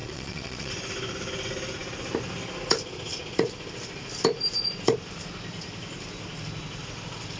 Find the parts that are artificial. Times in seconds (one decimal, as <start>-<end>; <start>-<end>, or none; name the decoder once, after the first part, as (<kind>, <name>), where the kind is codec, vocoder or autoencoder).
0.0-0.7 (vocoder, Vocos)

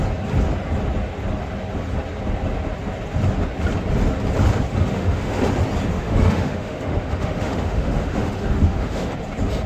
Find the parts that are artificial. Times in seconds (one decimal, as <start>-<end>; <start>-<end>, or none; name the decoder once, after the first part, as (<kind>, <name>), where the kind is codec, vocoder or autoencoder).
4.8-5.4 (autoencoder, DAC-VAE); 5.9-9.1

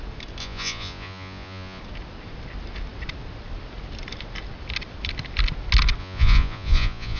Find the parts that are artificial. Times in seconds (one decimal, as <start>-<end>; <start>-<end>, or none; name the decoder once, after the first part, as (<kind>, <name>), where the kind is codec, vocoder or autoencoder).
0.4-1.8 (vocoder, Vocos); 6.0-7.2

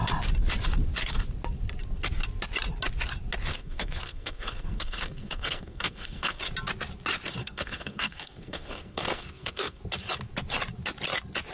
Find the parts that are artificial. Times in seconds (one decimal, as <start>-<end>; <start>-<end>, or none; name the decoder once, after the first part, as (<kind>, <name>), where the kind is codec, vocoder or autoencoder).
3.5-6.4 (codec, SNAC); 7.4-9.8

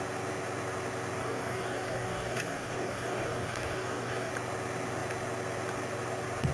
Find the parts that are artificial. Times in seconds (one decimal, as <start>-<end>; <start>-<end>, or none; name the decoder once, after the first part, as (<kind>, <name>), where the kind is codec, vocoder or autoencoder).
1.2-4.3 (codec, DAC)

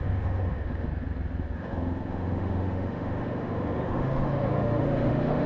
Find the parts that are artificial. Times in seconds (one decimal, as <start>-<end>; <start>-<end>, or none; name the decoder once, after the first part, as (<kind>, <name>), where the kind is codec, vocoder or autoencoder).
0.0-0.9 (autoencoder, DAC-VAE); 1.4-5.5

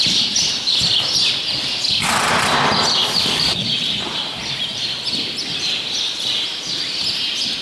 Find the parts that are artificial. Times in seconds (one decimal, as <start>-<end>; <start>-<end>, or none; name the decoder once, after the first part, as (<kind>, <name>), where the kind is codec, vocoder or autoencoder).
3.0-4.7 (vocoder, BigVGAN v2)

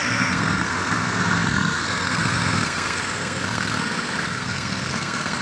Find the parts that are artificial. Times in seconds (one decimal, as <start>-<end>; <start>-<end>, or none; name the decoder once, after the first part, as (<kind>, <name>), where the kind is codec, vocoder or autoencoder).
0.0-5.4 (codec, SNAC)